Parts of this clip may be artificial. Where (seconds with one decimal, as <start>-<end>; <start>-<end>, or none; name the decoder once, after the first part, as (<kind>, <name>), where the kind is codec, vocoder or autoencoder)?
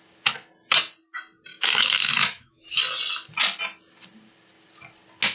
1.5-2.8 (autoencoder, DAC-VAE)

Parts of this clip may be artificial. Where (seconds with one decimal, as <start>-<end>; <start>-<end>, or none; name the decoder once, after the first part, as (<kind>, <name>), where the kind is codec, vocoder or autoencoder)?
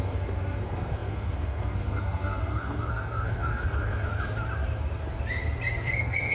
0.0-4.1 (codec, SNAC); 5.7-6.3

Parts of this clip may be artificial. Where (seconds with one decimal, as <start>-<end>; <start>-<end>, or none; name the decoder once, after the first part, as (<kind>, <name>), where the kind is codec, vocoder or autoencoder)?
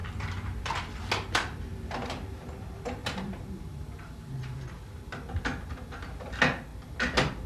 0.0-0.7 (vocoder, BigVGAN v2); 1.7-2.5; 3.0-4.6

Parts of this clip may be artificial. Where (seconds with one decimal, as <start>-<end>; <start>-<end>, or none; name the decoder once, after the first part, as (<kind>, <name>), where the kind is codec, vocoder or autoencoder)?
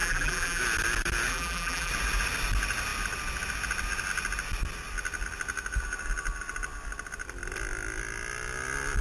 0.0-0.6 (vocoder, BigVGAN v2); 1.3-1.9